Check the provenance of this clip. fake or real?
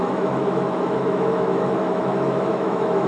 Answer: fake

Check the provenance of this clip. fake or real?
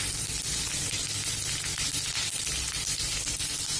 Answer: real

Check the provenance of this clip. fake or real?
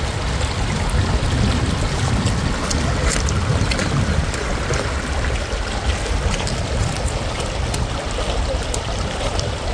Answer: real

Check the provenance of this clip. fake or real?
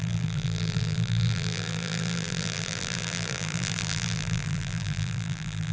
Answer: fake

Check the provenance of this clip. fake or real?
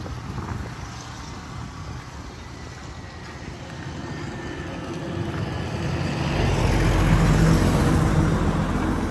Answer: real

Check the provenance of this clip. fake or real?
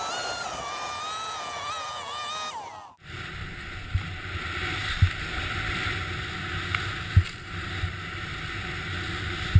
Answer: real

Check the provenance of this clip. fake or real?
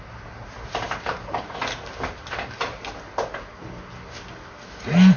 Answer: real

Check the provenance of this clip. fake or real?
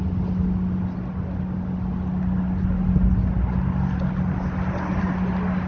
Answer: real